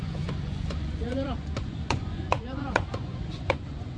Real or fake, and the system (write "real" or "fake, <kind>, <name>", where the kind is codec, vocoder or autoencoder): fake, vocoder, Vocos